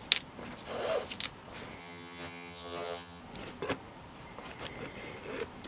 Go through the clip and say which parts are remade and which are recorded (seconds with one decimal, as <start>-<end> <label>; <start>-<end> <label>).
0.0-1.8 recorded; 1.8-3.2 remade; 3.2-5.7 recorded